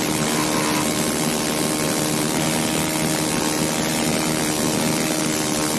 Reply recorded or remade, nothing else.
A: recorded